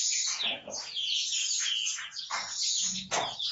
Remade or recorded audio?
remade